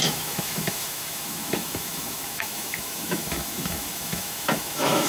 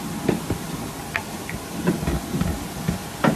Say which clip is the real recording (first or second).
second